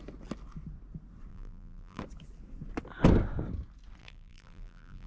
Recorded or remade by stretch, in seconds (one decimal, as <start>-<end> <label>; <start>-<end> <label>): 0.0-1.3 recorded; 1.3-2.0 remade; 2.0-4.0 recorded; 4.0-5.1 remade

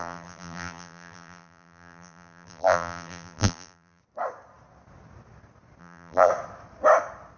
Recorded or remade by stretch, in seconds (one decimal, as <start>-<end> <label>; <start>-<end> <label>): 0.0-4.0 remade; 4.0-5.8 recorded; 5.8-6.3 remade; 6.3-7.4 recorded

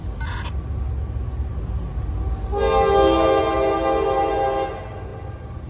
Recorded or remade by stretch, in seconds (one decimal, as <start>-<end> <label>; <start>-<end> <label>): 0.0-5.7 recorded

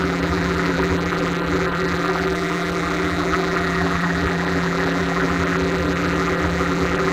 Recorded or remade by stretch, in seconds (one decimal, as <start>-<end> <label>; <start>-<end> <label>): 0.0-7.1 remade

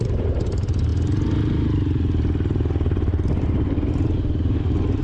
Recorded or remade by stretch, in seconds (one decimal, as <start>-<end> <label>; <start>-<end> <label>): 0.0-0.9 remade; 0.9-3.9 recorded; 3.9-5.0 remade

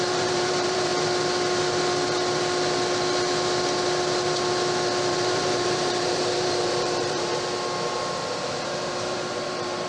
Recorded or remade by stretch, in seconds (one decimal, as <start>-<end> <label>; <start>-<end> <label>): 0.0-0.9 remade; 0.9-5.1 recorded; 5.1-7.3 remade; 7.3-8.4 recorded; 8.4-9.9 remade